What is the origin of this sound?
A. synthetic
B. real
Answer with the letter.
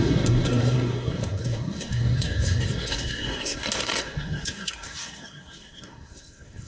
A